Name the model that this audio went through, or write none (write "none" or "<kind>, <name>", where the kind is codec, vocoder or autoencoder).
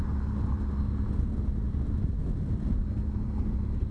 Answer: none